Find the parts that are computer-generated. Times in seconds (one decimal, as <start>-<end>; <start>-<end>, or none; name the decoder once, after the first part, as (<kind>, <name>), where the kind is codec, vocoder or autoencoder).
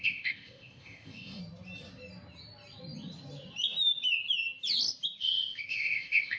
0.0-1.4 (codec, ZipCodec); 5.2-6.4